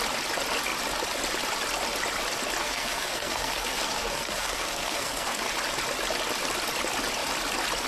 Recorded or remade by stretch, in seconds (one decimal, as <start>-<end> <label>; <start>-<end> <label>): 0.0-2.6 recorded; 2.6-5.4 remade; 5.4-7.9 recorded